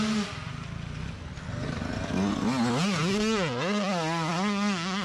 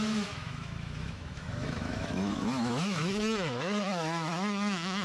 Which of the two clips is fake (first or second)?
second